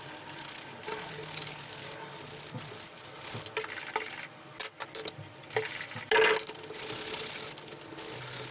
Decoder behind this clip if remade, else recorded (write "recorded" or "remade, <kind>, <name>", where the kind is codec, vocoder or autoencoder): recorded